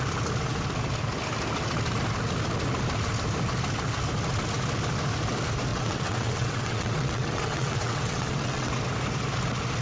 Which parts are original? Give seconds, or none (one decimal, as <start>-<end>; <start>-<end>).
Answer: 0.0-5.7; 8.8-9.8